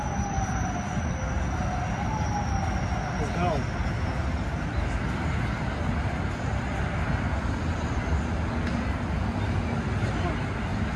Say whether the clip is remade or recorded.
recorded